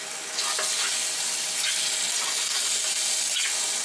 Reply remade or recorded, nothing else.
recorded